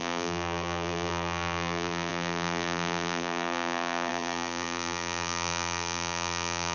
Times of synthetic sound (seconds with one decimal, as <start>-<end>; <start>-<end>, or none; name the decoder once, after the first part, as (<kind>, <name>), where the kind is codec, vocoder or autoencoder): 0.0-6.7 (vocoder, BigVGAN v2)